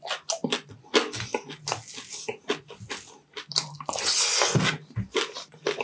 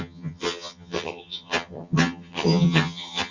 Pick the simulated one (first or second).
second